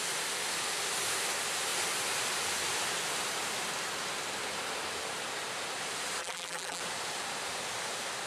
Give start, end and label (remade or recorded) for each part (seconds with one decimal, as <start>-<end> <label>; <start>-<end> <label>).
0.0-6.2 recorded; 6.2-6.8 remade; 6.8-8.3 recorded